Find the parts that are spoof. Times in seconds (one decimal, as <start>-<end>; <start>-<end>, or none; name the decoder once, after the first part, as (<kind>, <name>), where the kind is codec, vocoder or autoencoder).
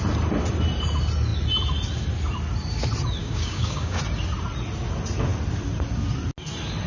3.2-4.0 (codec, DAC)